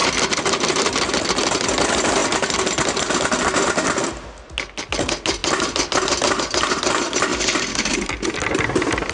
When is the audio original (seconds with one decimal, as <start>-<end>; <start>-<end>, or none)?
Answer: 0.0-9.1